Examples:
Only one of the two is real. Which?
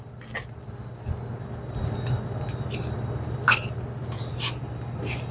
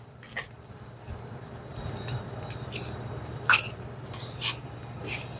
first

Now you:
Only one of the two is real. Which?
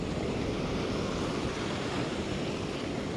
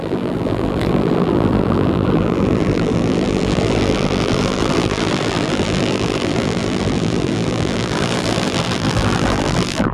first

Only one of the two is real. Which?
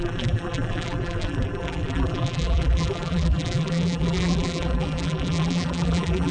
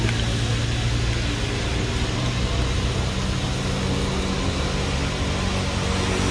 second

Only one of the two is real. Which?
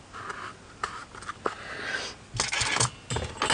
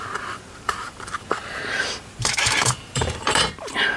first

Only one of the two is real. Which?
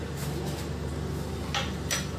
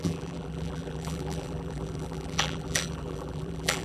first